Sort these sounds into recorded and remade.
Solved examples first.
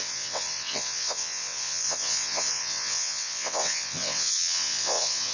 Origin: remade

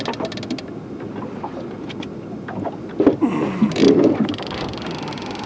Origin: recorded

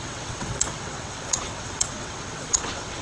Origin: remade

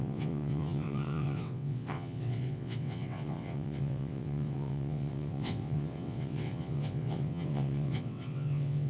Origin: remade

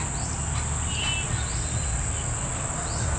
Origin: recorded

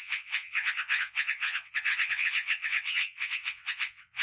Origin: remade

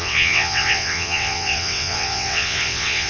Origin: remade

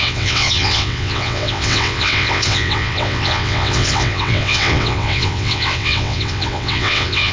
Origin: remade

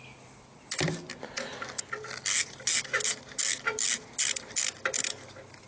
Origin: recorded